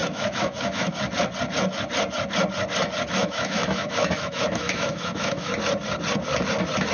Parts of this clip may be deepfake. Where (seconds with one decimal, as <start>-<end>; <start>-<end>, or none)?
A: 0.0-0.9; 3.2-5.5